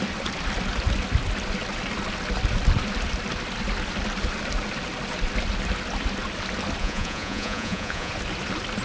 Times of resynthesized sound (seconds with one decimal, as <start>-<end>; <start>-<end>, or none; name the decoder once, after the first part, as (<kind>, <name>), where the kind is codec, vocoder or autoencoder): 6.8-8.1 (vocoder, Vocos)